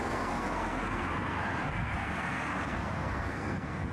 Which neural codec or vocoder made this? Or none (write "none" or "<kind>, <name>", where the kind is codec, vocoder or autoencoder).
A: codec, SNAC